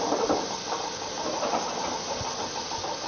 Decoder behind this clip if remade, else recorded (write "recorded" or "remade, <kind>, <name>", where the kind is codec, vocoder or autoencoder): recorded